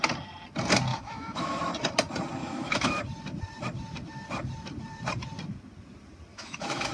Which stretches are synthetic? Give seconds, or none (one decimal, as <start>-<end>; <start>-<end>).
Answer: 0.9-1.6; 2.4-3.0; 6.3-6.9